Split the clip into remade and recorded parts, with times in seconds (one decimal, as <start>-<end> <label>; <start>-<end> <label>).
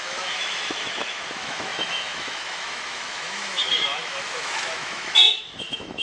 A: 0.0-6.0 remade